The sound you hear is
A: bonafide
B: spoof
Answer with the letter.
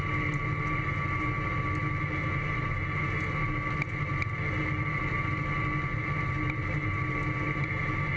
A